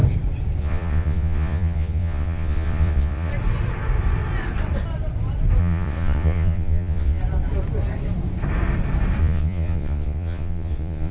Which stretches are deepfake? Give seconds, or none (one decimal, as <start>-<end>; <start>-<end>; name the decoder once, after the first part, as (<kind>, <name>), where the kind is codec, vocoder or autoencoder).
0.6-3.3 (vocoder, Vocos); 5.6-7.2; 9.2-11.1